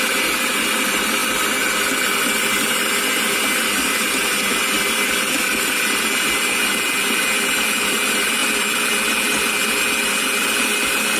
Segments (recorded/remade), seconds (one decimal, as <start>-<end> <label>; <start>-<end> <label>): 0.0-11.2 recorded